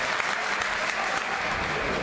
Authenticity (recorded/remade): recorded